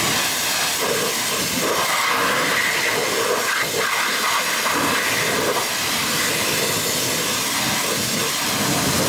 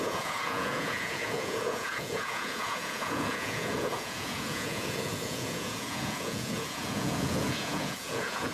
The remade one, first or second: second